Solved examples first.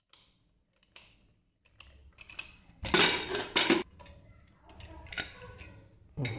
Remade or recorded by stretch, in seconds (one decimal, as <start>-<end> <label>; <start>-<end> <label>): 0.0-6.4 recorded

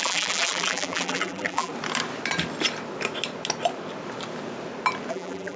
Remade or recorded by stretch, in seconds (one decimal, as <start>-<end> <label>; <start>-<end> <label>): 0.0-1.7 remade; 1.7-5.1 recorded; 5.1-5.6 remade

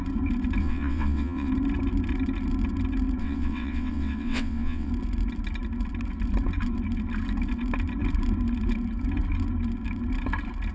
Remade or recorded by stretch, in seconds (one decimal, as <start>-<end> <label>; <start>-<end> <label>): 0.0-0.6 recorded; 0.6-1.5 remade; 1.5-3.2 recorded; 3.2-4.9 remade; 4.9-10.7 recorded

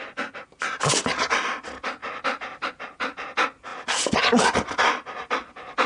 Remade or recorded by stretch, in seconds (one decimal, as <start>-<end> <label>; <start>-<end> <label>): 0.0-5.9 recorded

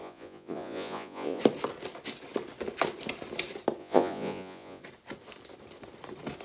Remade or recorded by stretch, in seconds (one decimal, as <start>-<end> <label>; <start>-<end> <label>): 0.0-1.4 remade; 1.4-3.8 recorded; 3.8-4.8 remade; 4.8-6.4 recorded

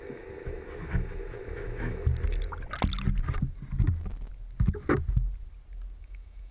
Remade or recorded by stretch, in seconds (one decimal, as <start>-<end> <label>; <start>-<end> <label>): 0.0-2.1 remade; 2.1-6.0 recorded; 6.0-6.5 remade

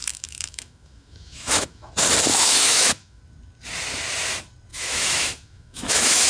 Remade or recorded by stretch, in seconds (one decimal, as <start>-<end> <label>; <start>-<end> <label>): 0.0-1.9 remade; 1.9-2.3 recorded; 2.3-3.2 remade; 3.2-4.7 recorded; 4.7-6.3 remade

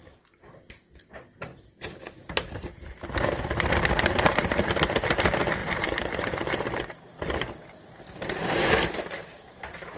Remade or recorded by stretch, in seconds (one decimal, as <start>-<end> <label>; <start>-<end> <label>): 0.0-1.5 recorded; 1.5-4.7 remade; 4.7-5.6 recorded; 5.6-10.0 remade